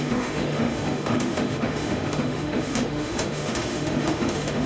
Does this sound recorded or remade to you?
remade